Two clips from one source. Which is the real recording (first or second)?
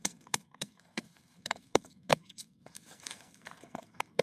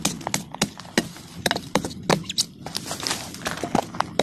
second